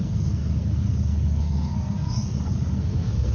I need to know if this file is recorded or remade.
remade